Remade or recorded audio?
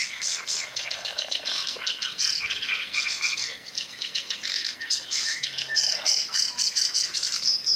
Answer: remade